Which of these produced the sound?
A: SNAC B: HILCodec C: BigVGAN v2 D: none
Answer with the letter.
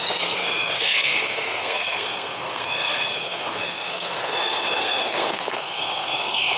A